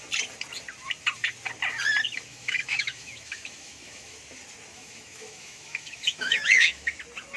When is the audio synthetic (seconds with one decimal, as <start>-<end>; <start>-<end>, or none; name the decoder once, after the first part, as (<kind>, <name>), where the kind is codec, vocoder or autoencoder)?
2.3-4.2 (autoencoder, DAC-VAE); 4.7-7.0

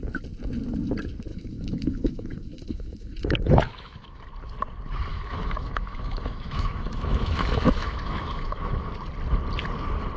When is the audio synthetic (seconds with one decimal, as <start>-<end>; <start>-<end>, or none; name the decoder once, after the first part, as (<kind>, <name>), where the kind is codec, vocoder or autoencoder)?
1.3-4.2 (autoencoder, DAC-VAE); 5.1-8.9

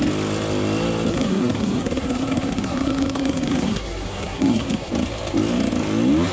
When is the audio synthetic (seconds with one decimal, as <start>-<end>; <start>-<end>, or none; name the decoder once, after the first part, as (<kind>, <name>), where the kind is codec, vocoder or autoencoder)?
1.1-4.9 (codec, SNAC)

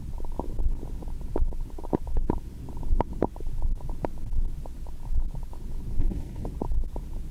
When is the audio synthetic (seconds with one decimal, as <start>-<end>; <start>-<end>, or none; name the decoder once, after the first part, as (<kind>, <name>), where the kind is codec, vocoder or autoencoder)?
6.0-6.5 (codec, SNAC)

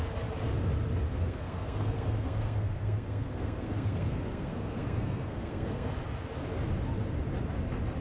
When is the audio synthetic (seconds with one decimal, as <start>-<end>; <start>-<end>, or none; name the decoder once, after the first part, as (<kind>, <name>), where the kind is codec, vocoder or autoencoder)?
1.1-5.9 (codec, SNAC)

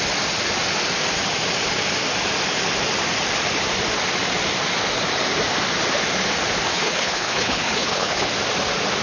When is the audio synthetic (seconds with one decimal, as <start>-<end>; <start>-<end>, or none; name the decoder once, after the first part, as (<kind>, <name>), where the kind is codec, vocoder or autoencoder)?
6.7-8.3 (codec, HILCodec)